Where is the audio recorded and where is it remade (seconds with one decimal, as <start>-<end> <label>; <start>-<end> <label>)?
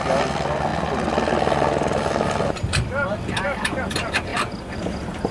0.0-5.3 recorded